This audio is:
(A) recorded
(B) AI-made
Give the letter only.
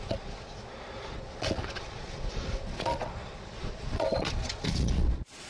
B